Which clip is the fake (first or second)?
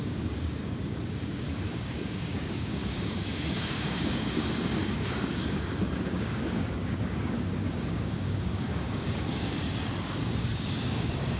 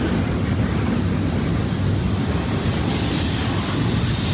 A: first